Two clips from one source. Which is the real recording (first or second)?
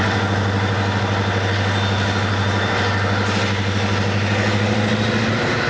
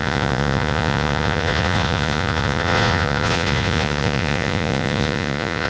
first